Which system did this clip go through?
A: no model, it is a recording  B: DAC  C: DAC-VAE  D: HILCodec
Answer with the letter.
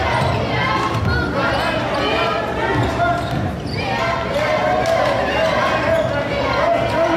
A